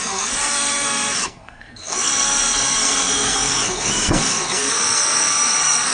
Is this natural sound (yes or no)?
no